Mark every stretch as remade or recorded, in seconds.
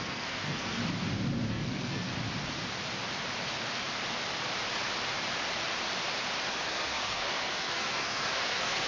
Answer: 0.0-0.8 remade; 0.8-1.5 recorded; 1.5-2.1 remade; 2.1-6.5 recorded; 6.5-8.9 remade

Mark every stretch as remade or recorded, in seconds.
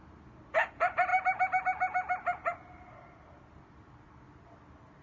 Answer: 0.0-5.0 recorded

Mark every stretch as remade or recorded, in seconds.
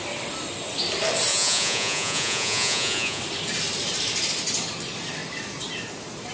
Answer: 0.0-1.3 recorded; 1.3-3.2 remade; 3.2-6.3 recorded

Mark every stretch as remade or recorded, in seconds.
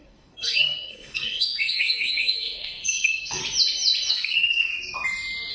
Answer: 0.0-3.4 remade; 3.4-4.1 recorded; 4.1-4.7 remade; 4.7-5.5 recorded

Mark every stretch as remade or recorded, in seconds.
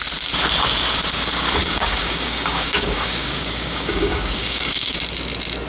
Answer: 0.0-1.6 recorded; 1.6-5.0 remade; 5.0-5.7 recorded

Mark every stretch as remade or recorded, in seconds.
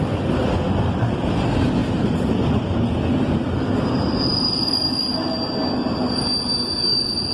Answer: 0.0-7.3 recorded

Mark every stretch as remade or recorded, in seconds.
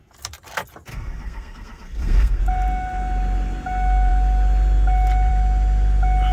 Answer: 0.0-0.9 recorded; 0.9-2.4 remade; 2.4-6.3 recorded